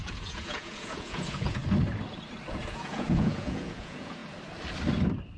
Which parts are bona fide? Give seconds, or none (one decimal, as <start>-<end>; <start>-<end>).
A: 1.6-2.5; 4.2-5.4